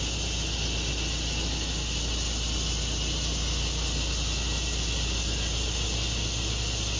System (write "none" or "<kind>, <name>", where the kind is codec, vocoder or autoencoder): none